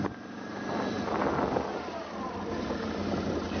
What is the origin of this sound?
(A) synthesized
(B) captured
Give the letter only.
B